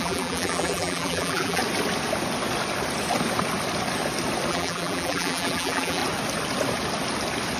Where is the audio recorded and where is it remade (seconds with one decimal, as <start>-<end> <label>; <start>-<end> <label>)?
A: 0.0-1.6 remade; 1.6-4.5 recorded; 4.5-6.0 remade; 6.0-7.6 recorded